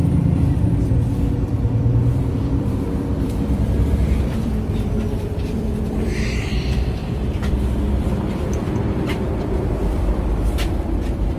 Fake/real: fake